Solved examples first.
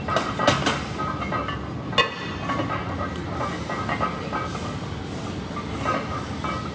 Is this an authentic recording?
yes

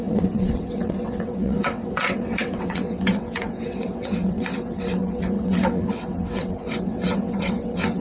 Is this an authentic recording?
no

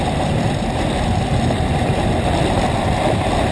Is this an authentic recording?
yes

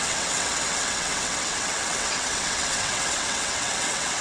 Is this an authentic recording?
no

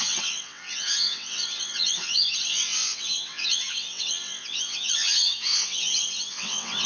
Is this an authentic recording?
no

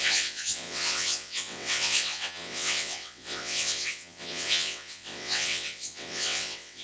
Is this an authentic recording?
no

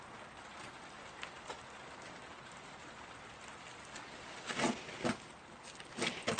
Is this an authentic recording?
yes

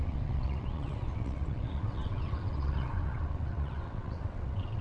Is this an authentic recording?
no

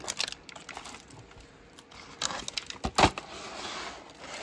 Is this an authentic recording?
yes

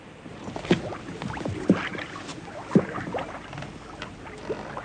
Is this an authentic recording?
yes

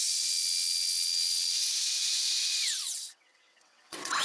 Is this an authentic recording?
no